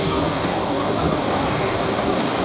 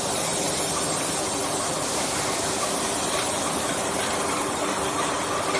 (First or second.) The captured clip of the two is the second